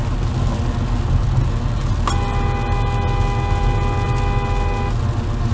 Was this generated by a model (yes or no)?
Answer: no